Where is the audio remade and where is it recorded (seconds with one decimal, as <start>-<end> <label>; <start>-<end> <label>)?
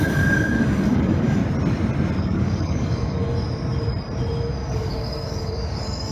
0.0-1.4 remade; 1.4-2.2 recorded; 2.2-3.2 remade; 3.2-4.7 recorded; 4.7-6.1 remade